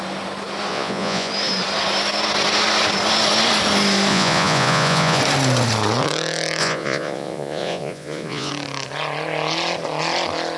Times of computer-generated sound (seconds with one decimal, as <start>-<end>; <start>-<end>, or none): 0.7-1.3; 4.1-5.2; 6.6-8.5